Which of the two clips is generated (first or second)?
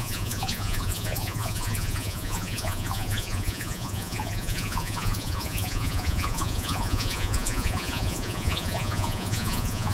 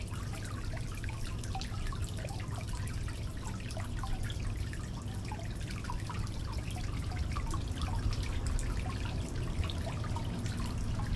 first